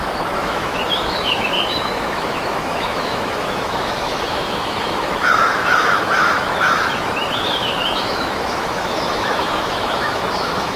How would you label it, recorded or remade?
remade